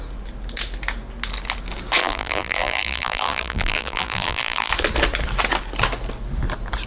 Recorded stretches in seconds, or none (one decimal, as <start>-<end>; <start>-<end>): 0.0-2.0; 4.7-6.9

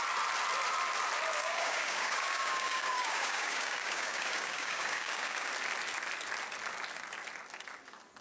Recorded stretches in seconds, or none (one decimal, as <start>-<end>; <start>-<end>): 0.0-1.4; 5.5-8.2